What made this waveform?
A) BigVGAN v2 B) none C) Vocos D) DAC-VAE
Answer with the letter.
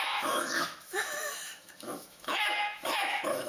D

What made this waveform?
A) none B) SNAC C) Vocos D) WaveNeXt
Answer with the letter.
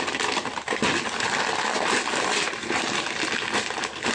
A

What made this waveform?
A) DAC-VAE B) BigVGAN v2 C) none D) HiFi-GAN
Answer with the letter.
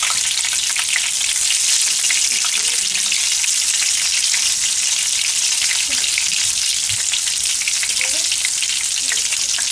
C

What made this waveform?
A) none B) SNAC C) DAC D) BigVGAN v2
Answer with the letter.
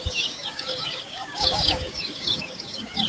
C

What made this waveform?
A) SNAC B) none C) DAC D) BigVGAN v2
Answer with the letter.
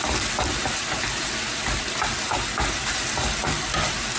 B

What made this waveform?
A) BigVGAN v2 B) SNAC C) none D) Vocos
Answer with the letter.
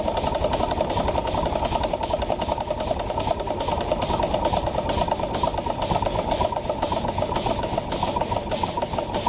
C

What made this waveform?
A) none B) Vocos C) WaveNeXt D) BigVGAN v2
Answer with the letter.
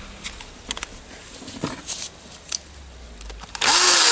A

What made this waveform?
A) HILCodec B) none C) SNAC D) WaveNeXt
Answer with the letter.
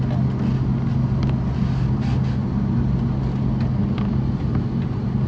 B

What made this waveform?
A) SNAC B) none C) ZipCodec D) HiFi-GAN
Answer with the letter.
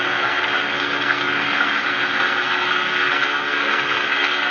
A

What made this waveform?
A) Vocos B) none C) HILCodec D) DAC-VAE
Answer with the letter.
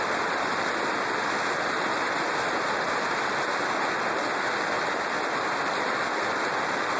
B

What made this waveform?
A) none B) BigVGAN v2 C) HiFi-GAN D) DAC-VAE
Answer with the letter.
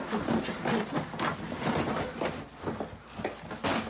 A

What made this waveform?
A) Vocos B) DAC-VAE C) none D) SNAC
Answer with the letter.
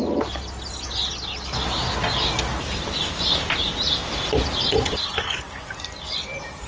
C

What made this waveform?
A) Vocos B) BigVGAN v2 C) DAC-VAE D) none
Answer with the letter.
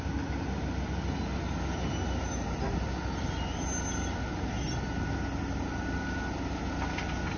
D